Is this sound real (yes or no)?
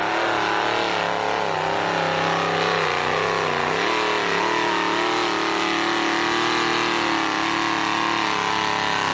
yes